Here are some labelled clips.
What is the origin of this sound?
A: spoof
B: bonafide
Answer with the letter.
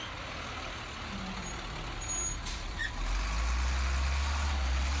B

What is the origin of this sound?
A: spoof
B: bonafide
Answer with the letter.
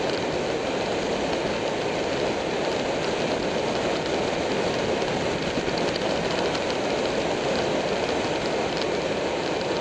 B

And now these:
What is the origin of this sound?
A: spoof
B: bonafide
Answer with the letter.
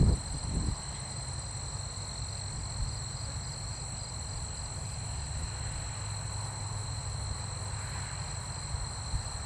B